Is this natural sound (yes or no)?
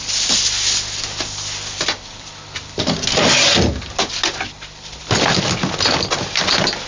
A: yes